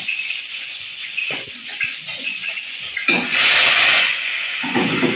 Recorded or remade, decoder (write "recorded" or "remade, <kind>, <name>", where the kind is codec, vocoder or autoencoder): remade, vocoder, Vocos